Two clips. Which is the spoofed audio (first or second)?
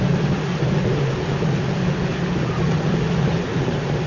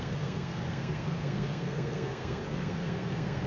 second